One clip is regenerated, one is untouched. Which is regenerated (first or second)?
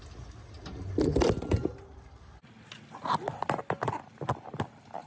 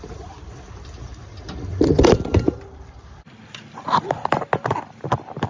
second